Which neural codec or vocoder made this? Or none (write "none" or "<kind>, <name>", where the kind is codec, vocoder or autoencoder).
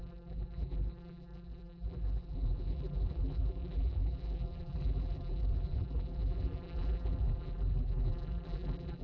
vocoder, BigVGAN v2